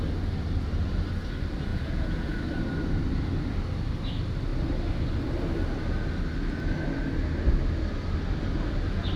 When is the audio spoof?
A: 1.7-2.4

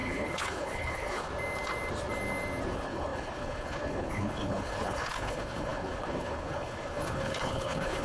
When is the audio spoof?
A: 0.0-1.3; 2.7-8.0

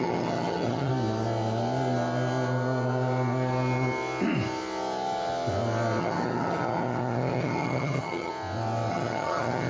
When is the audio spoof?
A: 0.0-0.9; 6.0-8.3; 8.9-9.7

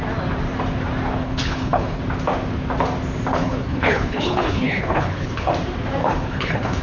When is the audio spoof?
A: 1.2-2.0; 3.3-5.5; 6.0-6.8

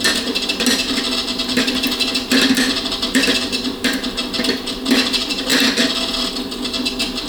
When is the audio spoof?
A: none

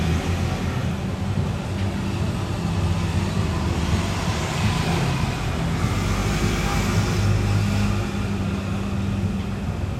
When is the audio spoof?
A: none